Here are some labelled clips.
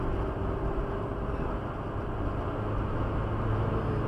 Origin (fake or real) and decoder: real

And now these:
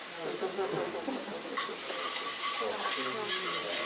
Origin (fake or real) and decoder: real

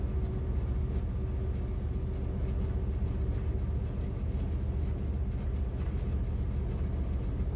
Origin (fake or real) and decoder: real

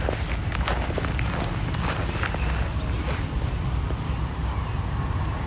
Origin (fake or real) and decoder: real